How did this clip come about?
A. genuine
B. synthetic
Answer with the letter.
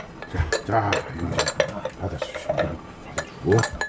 A